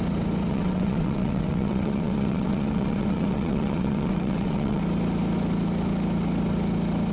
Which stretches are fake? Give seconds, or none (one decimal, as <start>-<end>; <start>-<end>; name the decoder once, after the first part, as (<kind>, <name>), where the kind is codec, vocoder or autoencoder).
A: 0.5-4.8 (vocoder, WaveNeXt)

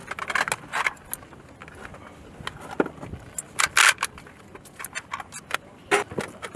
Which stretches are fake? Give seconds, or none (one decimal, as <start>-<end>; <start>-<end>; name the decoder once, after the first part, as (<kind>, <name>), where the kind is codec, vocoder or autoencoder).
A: none